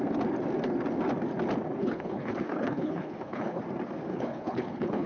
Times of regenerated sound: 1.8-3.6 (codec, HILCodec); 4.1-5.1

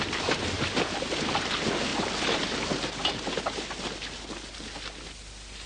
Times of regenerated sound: none

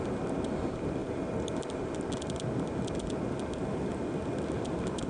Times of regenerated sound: none

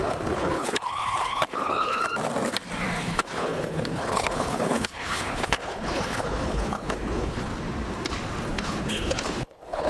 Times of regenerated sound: 0.0-2.0 (codec, HILCodec); 3.0-7.5; 8.5-9.9

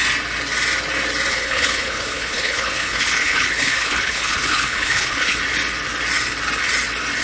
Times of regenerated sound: 1.3-5.4 (codec, HILCodec)

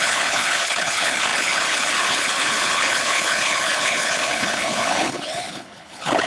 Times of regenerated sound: 0.0-6.3 (codec, HILCodec)